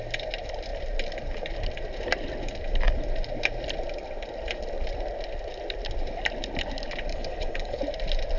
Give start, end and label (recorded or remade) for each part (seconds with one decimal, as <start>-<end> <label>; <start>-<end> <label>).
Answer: 0.0-7.1 recorded; 7.1-7.8 remade; 7.8-8.4 recorded